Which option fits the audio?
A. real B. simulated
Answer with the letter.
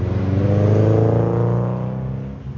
A